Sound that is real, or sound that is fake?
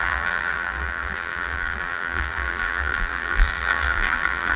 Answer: fake